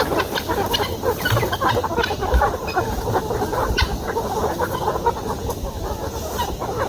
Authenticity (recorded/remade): recorded